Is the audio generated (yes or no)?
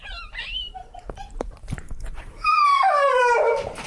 yes